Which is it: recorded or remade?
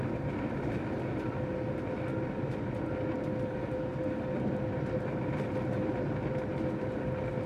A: recorded